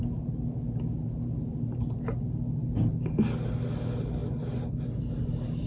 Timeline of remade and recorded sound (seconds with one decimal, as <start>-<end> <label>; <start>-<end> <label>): 0.0-5.7 recorded